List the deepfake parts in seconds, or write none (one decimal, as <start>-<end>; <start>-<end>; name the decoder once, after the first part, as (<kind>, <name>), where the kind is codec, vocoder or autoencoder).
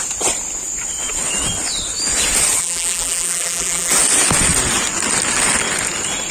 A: 2.6-3.9 (vocoder, BigVGAN v2)